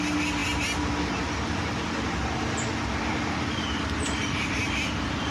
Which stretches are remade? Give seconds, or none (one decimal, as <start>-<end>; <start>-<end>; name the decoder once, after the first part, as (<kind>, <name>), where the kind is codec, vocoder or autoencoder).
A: none